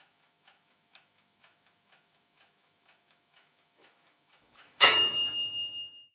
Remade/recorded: remade